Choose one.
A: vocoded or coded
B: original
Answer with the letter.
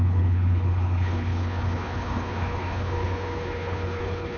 A